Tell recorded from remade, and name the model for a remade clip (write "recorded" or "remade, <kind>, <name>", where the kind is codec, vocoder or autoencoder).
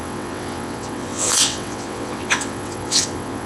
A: remade, vocoder, WaveNeXt